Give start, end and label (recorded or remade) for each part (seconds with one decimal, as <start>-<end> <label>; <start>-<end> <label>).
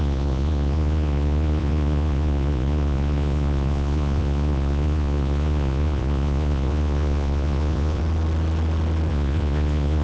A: 0.0-8.0 remade; 8.0-9.1 recorded; 9.1-10.0 remade